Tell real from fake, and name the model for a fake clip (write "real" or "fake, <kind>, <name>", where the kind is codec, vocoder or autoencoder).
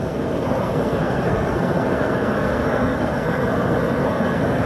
fake, codec, SNAC